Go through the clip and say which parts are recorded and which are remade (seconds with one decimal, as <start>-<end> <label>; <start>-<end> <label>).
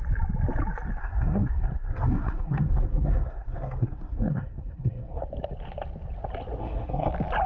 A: 0.0-1.0 recorded; 1.0-5.2 remade; 5.2-6.6 recorded; 6.6-7.1 remade; 7.1-7.5 recorded